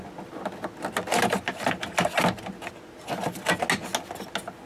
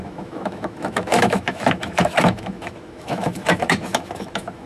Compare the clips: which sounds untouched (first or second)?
first